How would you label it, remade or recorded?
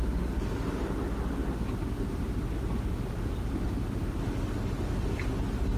recorded